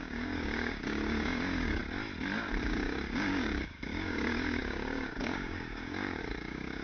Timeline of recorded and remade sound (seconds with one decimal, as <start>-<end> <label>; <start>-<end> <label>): 0.0-1.8 remade; 1.8-2.6 recorded; 2.6-6.8 remade